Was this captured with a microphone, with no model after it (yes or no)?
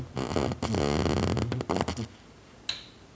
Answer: yes